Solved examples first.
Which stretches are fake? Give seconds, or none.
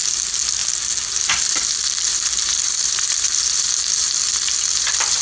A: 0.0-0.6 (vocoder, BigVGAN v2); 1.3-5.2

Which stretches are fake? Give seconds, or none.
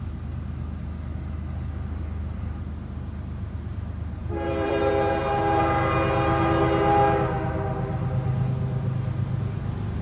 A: 4.2-4.9 (vocoder, BigVGAN v2)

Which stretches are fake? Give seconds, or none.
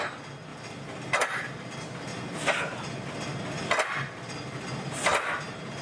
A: 0.5-1.6 (vocoder, BigVGAN v2)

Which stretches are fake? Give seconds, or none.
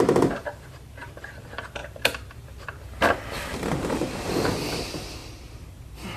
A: 0.0-6.2 (vocoder, BigVGAN v2)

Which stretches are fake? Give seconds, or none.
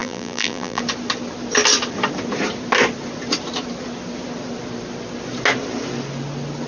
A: 0.0-0.8 (vocoder, BigVGAN v2)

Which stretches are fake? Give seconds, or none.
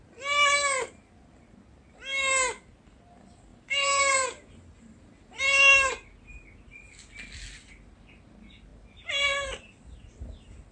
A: 3.5-5.4 (vocoder, BigVGAN v2)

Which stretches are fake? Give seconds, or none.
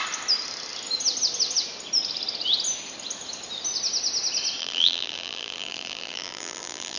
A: 4.6-7.0 (vocoder, BigVGAN v2)